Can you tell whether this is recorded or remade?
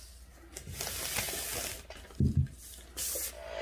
recorded